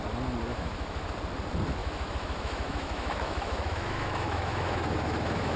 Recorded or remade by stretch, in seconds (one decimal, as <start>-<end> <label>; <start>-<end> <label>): 0.0-0.5 recorded; 0.5-1.1 remade; 1.1-1.8 recorded; 1.8-5.6 remade